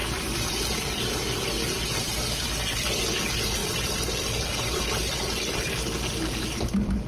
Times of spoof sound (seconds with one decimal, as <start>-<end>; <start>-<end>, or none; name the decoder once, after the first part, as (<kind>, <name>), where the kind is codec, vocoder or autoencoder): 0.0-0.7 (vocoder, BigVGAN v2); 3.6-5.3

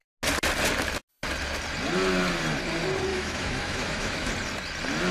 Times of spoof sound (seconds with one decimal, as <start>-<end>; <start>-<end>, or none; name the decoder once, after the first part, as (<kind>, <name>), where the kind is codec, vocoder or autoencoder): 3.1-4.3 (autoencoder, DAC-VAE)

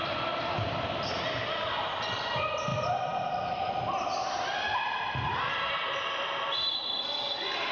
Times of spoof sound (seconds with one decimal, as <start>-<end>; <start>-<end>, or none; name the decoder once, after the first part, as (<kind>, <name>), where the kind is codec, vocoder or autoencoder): none